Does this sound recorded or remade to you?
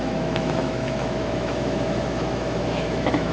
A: remade